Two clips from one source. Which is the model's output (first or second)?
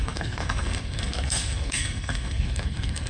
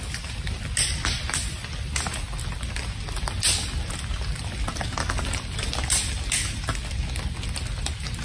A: first